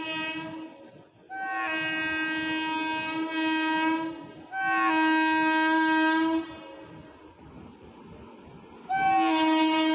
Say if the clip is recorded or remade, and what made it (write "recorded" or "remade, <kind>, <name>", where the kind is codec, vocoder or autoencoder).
recorded